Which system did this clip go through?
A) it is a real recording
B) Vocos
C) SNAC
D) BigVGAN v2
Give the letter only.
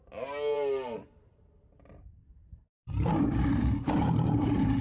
D